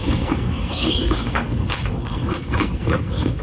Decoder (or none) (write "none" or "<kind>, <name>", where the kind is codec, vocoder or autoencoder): codec, SNAC